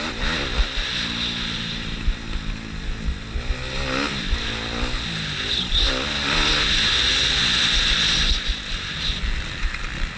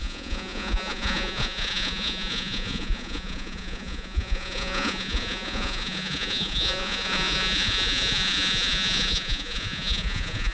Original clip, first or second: first